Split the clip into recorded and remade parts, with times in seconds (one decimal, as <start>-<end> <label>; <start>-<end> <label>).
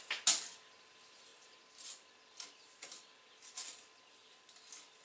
0.0-5.0 recorded